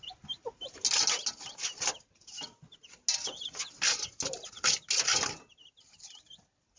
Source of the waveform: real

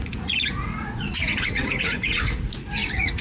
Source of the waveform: fake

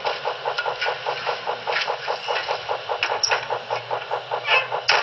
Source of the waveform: real